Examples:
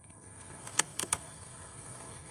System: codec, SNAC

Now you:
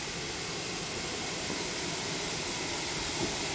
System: none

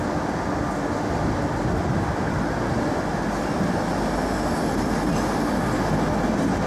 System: none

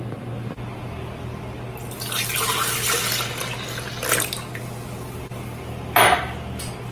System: none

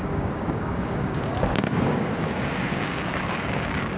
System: codec, DAC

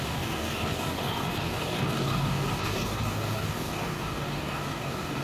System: codec, DAC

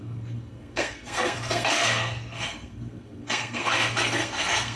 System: codec, SNAC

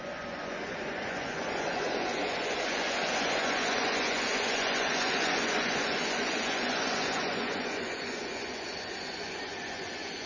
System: vocoder, Vocos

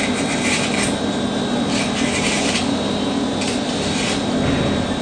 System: none